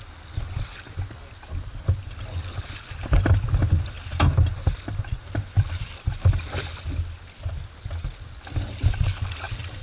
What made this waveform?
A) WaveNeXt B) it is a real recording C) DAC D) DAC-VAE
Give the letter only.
B